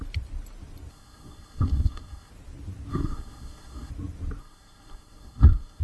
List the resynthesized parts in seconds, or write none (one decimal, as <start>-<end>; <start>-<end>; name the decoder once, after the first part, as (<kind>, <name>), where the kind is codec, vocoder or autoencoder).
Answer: 0.9-2.3 (codec, SNAC); 2.9-3.9; 4.4-5.8